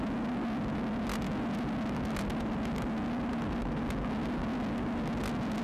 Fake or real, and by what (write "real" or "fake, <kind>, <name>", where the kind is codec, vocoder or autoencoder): real